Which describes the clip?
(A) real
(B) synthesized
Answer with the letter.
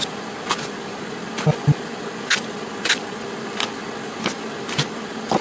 A